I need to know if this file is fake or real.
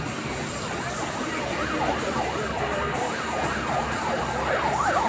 real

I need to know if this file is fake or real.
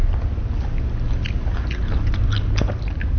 real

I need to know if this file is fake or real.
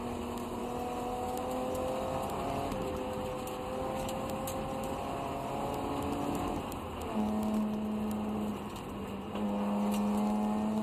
real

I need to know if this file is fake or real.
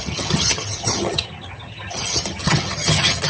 fake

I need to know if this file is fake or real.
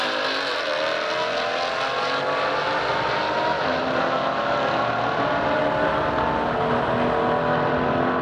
real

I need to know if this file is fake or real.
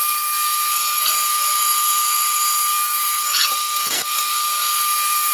fake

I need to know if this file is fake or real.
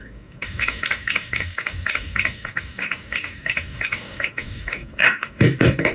fake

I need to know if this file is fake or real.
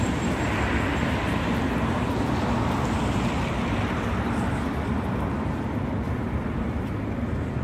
real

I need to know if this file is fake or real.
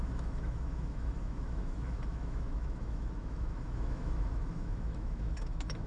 fake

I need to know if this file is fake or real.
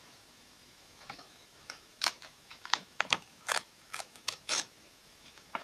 fake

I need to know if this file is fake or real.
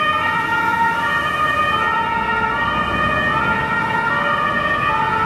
real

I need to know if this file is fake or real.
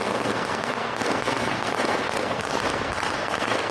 fake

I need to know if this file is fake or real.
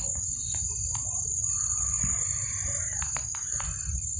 real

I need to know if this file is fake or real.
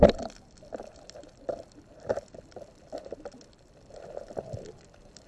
fake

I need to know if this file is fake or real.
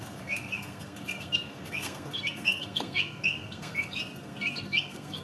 fake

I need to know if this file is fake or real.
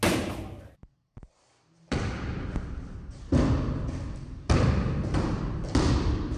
real